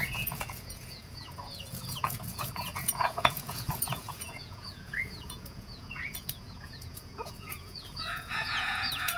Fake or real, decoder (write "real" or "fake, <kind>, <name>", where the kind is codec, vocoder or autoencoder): fake, vocoder, Vocos